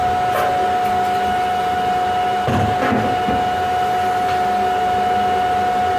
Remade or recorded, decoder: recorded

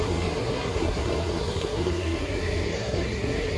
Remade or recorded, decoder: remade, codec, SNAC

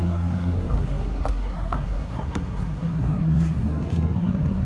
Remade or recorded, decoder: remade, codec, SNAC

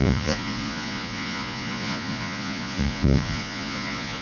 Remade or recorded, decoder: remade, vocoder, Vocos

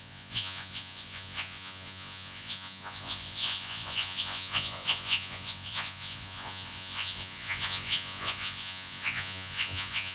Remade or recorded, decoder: remade, vocoder, Vocos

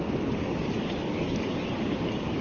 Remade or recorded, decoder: remade, codec, DAC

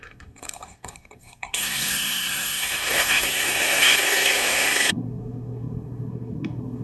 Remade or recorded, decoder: remade, codec, SNAC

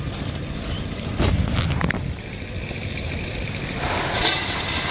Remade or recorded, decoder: recorded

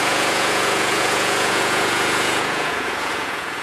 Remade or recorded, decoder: remade, vocoder, Vocos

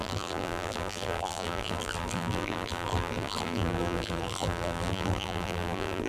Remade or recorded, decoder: remade, vocoder, BigVGAN v2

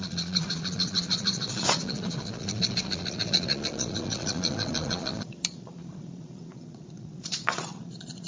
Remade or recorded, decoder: remade, vocoder, Vocos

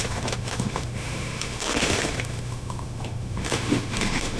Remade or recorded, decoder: remade, autoencoder, DAC-VAE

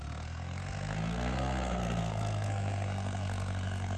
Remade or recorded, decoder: remade, codec, SNAC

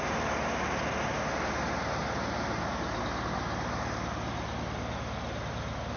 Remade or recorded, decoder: recorded